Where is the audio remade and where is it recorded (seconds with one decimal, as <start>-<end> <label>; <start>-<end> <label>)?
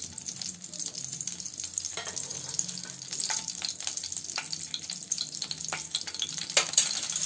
0.0-7.3 recorded